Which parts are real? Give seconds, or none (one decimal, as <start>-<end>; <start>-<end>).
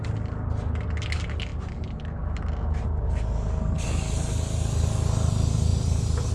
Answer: 0.0-5.7